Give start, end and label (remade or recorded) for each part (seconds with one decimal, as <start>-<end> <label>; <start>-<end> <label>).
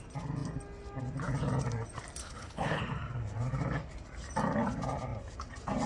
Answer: 0.0-2.2 recorded; 2.2-2.8 remade; 2.8-5.9 recorded